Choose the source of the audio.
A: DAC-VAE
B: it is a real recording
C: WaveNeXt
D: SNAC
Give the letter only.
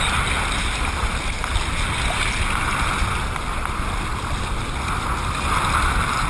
B